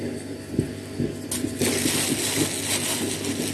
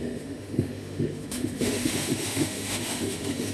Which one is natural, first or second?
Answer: first